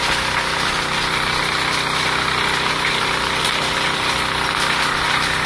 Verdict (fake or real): real